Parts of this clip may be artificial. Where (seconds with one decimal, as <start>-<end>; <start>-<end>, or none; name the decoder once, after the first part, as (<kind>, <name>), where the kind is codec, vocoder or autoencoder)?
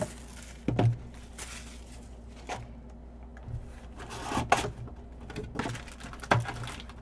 none